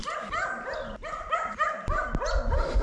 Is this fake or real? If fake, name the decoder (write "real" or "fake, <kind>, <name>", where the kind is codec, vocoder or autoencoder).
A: real